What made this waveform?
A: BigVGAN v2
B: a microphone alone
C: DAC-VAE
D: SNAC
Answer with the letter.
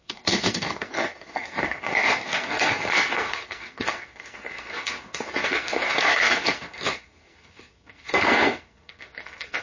D